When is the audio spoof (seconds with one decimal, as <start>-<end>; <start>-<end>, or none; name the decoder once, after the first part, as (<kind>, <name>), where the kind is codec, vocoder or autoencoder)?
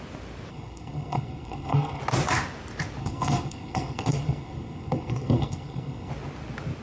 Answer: 0.5-2.0 (codec, SNAC); 3.0-6.1